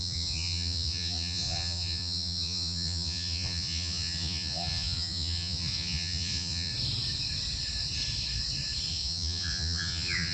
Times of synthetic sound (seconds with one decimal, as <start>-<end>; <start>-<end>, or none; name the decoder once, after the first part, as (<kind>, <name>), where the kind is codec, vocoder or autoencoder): 0.0-6.7 (vocoder, Vocos); 8.9-10.3